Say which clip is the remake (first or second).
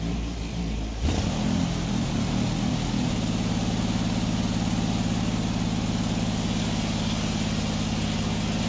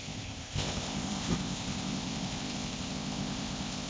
second